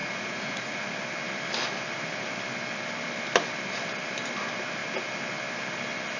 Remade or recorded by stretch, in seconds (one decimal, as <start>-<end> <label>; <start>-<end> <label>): 0.0-0.8 remade; 0.8-6.2 recorded